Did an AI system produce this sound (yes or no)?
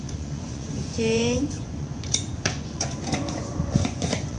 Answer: yes